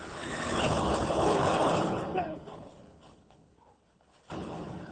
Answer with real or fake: fake